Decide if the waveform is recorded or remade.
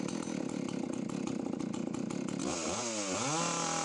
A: recorded